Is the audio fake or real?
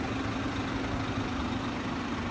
real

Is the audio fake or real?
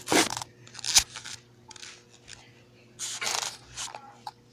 real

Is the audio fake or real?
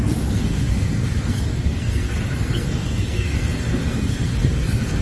fake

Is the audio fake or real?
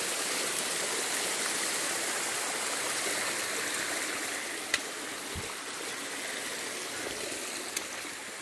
real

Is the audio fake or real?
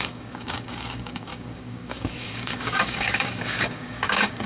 fake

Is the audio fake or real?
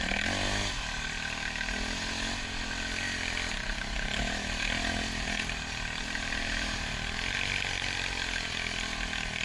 real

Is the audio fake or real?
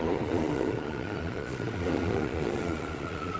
fake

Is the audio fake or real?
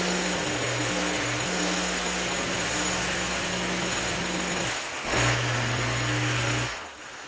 real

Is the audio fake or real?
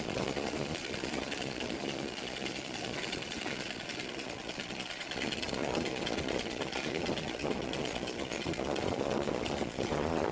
fake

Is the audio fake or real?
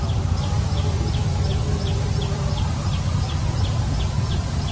real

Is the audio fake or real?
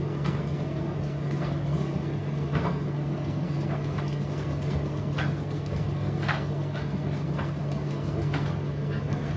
fake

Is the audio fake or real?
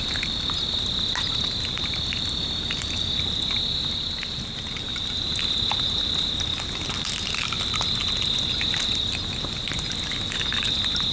real